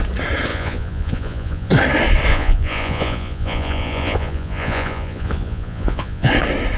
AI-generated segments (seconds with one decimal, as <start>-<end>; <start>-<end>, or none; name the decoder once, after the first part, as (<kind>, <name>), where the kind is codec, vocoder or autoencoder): 0.5-1.7 (vocoder, Vocos); 2.3-6.3